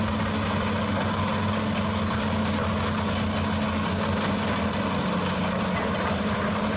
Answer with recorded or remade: recorded